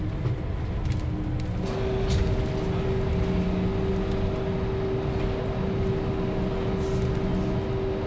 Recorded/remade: recorded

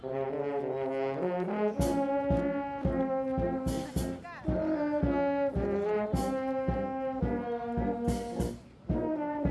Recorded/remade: recorded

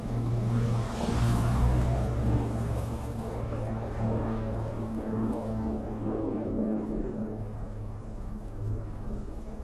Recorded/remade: remade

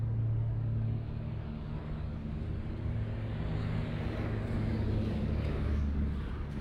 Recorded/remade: remade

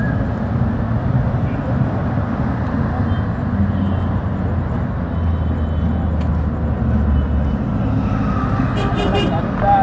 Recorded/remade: recorded